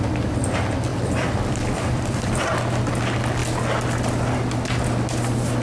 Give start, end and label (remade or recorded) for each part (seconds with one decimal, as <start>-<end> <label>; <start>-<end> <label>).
0.0-0.9 recorded; 0.9-2.4 remade; 2.4-5.6 recorded